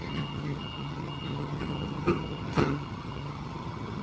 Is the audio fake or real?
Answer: fake